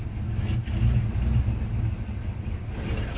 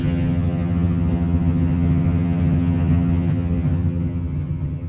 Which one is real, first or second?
first